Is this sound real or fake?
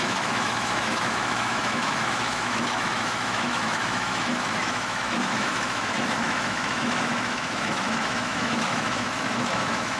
fake